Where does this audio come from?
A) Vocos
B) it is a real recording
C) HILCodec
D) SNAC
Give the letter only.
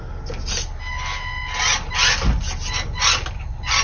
B